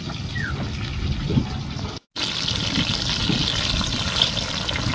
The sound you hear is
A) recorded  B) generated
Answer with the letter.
A